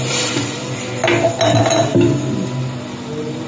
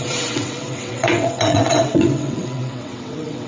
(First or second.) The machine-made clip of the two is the second